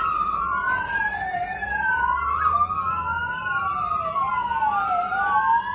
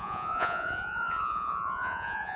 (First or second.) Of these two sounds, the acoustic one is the first